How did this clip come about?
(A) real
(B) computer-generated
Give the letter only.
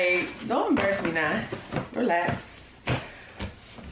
A